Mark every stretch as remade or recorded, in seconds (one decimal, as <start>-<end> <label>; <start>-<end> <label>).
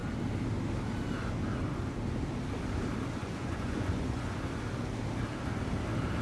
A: 0.0-3.2 recorded; 3.2-4.4 remade; 4.4-6.2 recorded